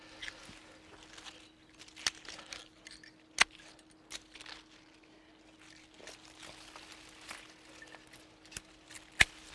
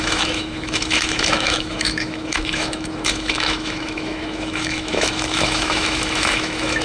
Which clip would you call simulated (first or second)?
second